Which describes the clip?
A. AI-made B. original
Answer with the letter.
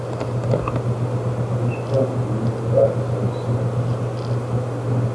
B